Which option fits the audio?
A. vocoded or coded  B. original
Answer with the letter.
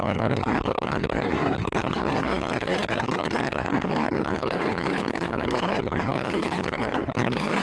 A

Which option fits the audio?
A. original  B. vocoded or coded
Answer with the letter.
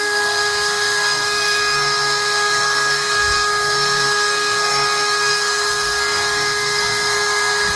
B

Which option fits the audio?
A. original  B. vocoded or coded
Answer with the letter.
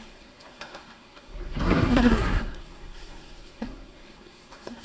B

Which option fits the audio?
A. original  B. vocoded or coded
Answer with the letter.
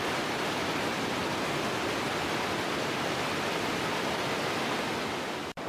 A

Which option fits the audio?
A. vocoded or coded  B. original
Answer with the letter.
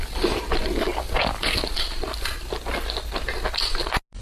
B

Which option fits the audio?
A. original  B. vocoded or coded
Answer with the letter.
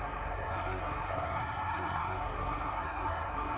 B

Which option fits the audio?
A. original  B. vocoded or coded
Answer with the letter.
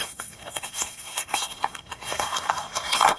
B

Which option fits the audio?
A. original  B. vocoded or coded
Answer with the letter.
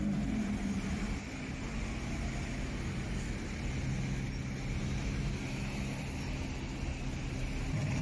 A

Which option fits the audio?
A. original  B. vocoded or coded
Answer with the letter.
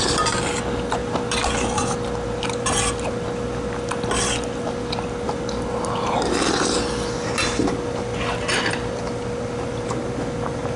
A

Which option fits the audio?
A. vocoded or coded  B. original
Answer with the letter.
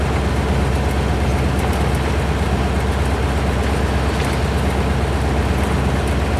B